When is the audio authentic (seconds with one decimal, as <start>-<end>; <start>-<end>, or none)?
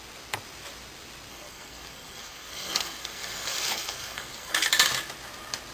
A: 0.0-1.3; 4.7-5.7